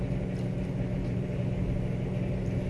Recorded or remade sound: recorded